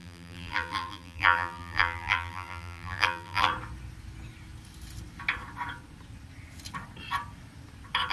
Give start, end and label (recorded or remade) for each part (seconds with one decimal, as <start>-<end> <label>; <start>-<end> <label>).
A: 0.0-3.5 remade; 3.5-8.1 recorded